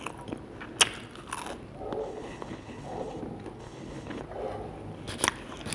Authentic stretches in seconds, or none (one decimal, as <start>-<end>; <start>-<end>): 0.0-2.0; 3.2-3.6; 4.2-5.7